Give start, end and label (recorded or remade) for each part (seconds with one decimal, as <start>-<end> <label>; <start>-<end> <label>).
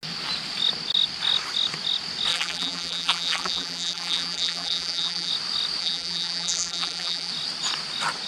0.0-2.3 recorded; 2.3-5.3 remade; 5.3-5.8 recorded; 5.8-7.3 remade; 7.3-8.3 recorded